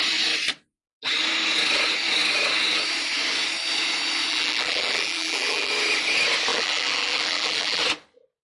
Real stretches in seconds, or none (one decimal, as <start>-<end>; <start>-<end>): 0.0-4.3; 5.7-6.5; 7.8-8.4